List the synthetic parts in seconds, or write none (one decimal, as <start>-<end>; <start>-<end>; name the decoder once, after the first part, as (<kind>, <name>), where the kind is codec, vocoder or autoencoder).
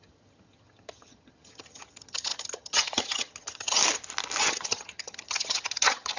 0.0-3.8 (vocoder, HiFi-GAN); 4.4-6.2